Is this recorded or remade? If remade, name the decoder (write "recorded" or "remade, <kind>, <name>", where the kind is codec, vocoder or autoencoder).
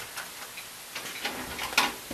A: recorded